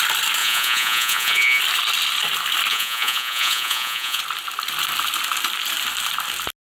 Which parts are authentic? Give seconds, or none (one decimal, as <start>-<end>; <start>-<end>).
0.0-0.4; 1.6-2.7; 4.2-6.8